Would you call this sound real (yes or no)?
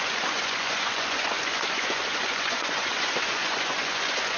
no